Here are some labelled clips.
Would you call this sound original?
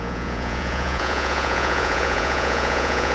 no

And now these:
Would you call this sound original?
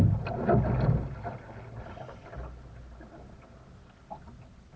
yes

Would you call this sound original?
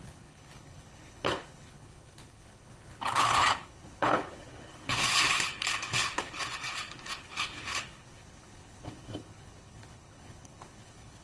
no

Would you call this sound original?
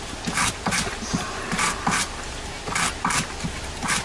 yes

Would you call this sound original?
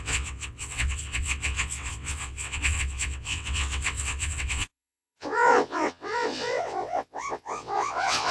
no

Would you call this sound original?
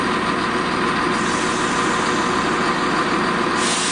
yes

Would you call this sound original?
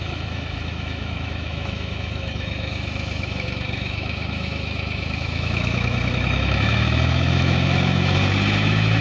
no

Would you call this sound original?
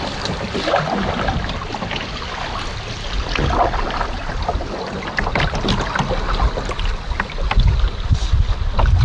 yes